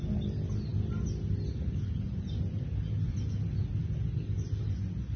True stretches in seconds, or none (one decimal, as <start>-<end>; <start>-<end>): 0.0-5.2